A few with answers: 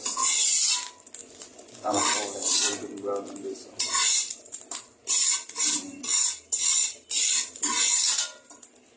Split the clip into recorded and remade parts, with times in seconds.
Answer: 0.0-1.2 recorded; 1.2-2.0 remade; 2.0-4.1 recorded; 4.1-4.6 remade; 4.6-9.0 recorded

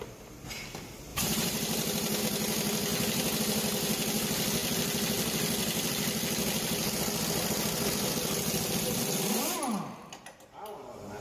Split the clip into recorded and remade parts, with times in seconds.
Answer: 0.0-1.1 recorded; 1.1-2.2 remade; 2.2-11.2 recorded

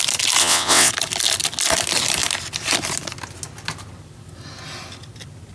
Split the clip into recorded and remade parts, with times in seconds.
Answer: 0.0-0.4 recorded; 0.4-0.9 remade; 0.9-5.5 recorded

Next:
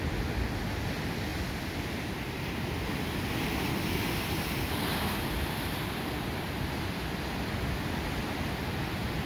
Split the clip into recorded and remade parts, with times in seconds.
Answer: 0.0-9.3 recorded

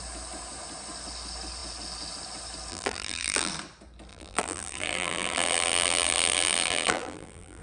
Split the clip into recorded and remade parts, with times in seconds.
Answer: 0.0-2.7 recorded; 2.7-3.5 remade; 3.5-4.1 recorded; 4.1-7.6 remade